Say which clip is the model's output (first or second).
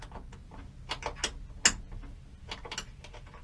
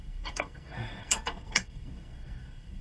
second